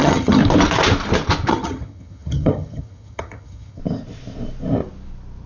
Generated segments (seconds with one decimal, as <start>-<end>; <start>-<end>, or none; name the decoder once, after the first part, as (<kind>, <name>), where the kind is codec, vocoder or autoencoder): 0.0-0.4 (vocoder, HiFi-GAN); 1.5-3.8